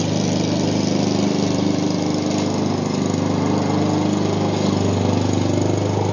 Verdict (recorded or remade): recorded